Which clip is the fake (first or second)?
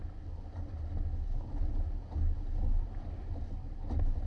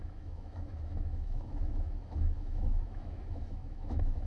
second